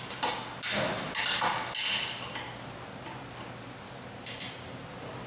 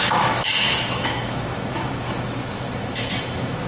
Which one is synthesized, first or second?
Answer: second